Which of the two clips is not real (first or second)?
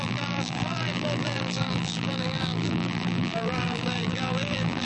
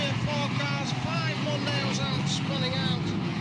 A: first